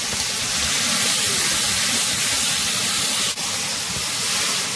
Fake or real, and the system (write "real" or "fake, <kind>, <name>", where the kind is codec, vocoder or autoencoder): real